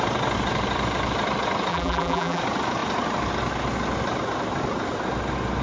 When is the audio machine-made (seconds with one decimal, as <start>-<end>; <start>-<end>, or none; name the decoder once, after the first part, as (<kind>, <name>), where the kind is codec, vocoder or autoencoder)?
1.7-2.4 (vocoder, BigVGAN v2)